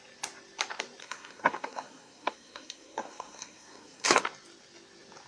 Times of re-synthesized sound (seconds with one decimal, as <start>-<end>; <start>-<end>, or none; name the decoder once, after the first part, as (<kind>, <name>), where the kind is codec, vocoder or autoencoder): 1.0-4.2 (codec, SNAC)